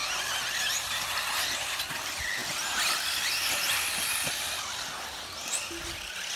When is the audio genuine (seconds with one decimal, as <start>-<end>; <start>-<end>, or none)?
0.0-6.4